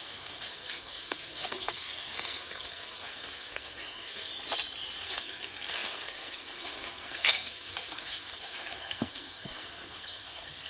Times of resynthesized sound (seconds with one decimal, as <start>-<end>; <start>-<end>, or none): 0.0-4.3; 5.0-10.7